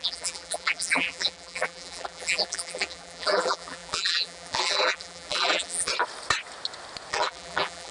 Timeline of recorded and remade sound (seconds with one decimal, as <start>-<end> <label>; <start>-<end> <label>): 0.0-5.9 remade; 5.9-7.1 recorded; 7.1-7.9 remade